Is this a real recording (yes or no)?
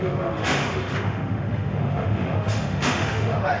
no